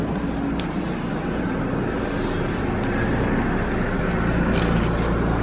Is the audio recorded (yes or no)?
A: yes